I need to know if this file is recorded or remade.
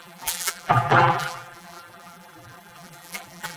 remade